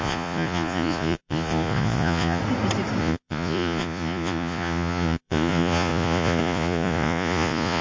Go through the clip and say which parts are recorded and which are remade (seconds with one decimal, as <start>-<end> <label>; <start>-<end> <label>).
0.0-2.4 remade; 2.4-3.0 recorded; 3.0-7.8 remade